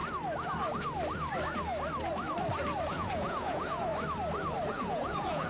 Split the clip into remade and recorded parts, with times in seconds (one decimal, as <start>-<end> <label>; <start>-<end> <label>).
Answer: 0.0-2.9 recorded; 2.9-3.9 remade; 3.9-4.7 recorded; 4.7-5.5 remade